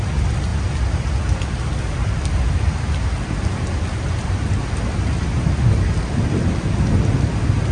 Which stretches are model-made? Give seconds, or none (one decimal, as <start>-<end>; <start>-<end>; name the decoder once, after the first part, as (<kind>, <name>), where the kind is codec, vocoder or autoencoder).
none